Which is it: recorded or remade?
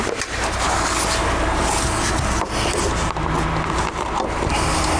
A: recorded